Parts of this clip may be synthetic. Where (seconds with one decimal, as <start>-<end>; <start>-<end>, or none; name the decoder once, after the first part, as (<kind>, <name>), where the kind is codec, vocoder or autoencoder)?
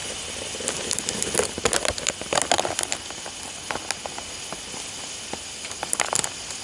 none